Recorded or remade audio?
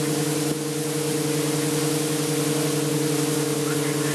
recorded